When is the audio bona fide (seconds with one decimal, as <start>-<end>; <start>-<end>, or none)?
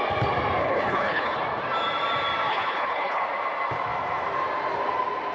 0.0-0.6; 1.4-2.5; 3.2-5.3